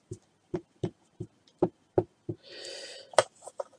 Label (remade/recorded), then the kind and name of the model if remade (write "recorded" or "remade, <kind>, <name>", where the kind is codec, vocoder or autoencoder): recorded